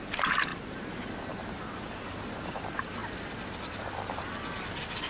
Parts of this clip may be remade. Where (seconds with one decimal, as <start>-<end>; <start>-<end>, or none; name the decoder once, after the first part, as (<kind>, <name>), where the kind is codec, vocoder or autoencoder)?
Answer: 0.0-3.0 (vocoder, BigVGAN v2)